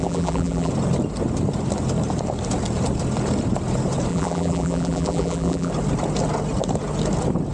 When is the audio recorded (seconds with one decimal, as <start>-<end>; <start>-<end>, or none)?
0.7-4.1; 5.7-7.5